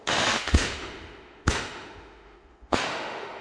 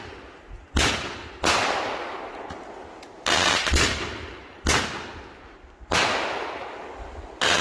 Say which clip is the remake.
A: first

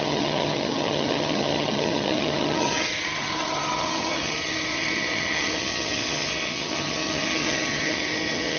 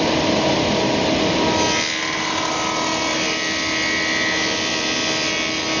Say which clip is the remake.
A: first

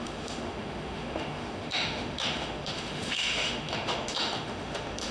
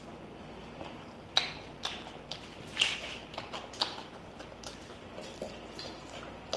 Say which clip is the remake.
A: first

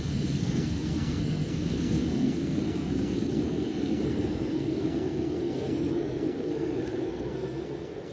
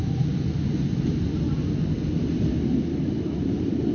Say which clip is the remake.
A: first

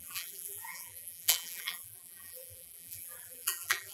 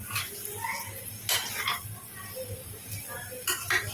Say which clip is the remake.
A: first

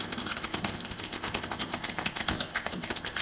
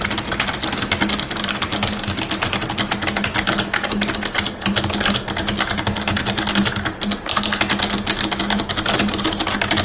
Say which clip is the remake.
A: first